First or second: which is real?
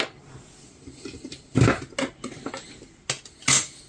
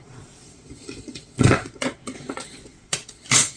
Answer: first